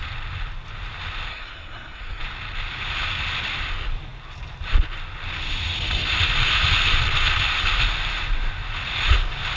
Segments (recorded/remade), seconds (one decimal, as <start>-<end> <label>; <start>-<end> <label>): 0.0-1.3 recorded; 1.3-2.2 remade; 2.2-9.6 recorded